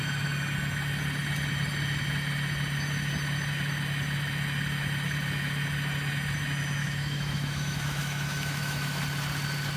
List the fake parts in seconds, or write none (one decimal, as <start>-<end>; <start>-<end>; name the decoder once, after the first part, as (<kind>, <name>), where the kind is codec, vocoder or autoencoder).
6.8-9.0 (autoencoder, DAC-VAE)